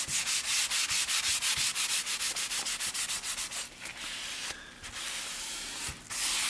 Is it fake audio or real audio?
real